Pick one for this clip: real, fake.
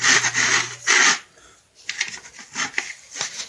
real